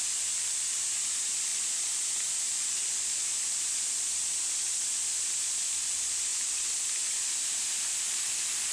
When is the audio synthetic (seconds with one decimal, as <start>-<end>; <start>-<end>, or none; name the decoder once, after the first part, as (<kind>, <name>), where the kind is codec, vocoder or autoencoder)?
0.0-8.7 (vocoder, BigVGAN v2)